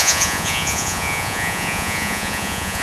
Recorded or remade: remade